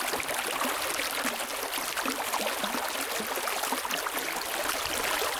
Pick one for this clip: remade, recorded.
recorded